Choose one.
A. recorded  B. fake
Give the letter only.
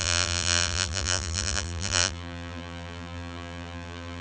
B